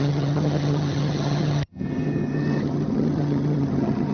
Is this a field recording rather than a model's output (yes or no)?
no